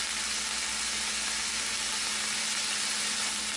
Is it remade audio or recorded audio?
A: recorded